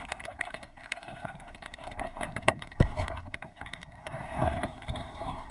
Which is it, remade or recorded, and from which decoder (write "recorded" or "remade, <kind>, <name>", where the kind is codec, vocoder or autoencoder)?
remade, codec, SNAC